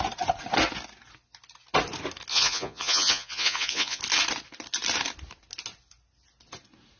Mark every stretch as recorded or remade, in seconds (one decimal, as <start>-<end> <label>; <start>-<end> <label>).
0.0-2.3 recorded; 2.3-4.0 remade; 4.0-7.0 recorded